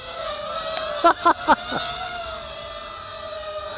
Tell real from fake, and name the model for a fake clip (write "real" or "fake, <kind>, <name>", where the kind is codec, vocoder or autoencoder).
real